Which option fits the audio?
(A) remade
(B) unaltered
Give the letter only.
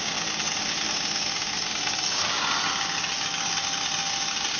B